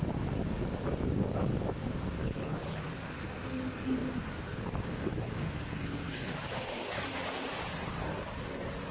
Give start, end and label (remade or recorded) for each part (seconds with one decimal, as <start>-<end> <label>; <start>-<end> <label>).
0.0-2.2 recorded; 2.2-2.8 remade; 2.8-8.9 recorded